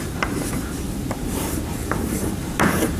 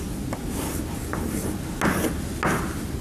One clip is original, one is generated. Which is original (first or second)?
second